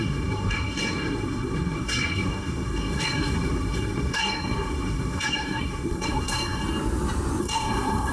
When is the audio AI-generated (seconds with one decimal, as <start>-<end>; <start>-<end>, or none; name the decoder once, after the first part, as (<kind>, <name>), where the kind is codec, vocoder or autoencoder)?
0.0-6.6 (codec, SNAC); 7.4-8.1